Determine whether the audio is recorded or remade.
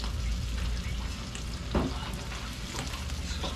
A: recorded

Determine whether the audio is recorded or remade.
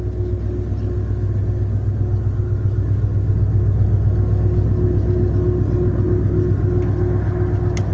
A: recorded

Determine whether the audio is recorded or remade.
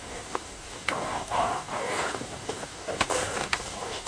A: remade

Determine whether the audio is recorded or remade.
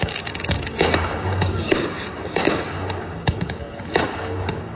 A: remade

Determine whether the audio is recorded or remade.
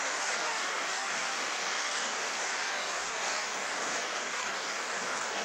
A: remade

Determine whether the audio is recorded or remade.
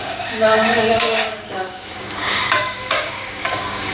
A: remade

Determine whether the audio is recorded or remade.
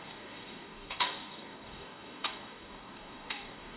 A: remade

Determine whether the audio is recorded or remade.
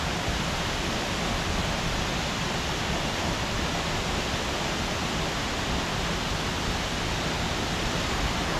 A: recorded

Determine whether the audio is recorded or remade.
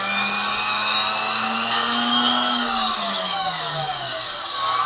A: remade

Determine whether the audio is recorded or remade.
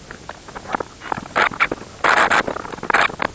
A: recorded